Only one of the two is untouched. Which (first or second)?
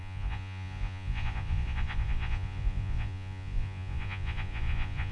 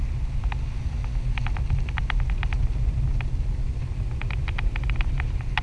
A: second